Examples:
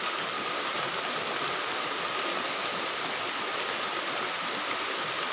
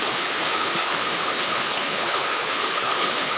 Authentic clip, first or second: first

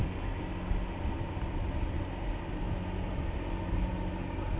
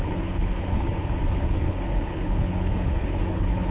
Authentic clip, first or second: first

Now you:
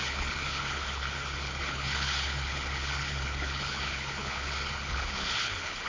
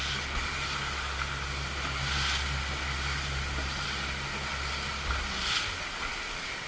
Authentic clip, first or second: second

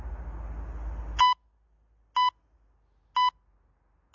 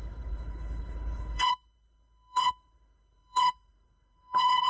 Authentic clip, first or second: first